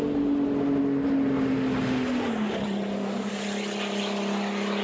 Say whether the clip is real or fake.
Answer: real